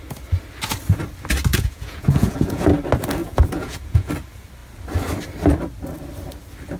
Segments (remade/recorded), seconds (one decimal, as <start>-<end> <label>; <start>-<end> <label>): 0.0-1.5 recorded; 1.5-2.7 remade; 2.7-3.2 recorded; 3.2-4.1 remade; 4.1-6.8 recorded